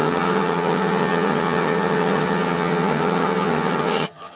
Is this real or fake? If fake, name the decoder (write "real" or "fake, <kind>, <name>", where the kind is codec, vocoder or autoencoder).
fake, vocoder, HiFi-GAN